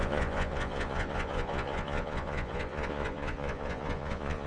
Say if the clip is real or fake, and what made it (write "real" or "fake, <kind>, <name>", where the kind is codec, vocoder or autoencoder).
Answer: fake, vocoder, Vocos